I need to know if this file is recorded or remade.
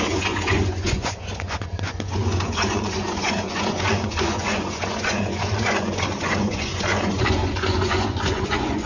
remade